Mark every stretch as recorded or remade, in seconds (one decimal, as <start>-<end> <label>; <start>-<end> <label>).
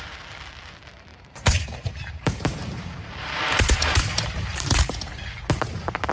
0.0-1.1 recorded; 1.1-4.8 remade; 4.8-6.1 recorded